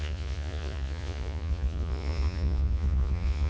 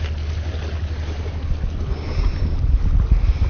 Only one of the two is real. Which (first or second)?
second